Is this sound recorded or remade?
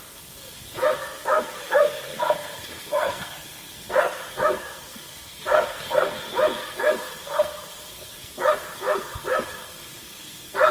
remade